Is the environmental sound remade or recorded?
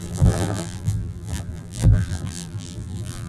remade